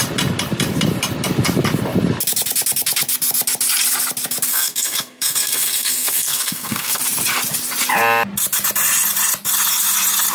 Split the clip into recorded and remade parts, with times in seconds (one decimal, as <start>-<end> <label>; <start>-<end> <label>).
0.0-4.5 recorded; 4.5-7.0 remade; 7.0-10.3 recorded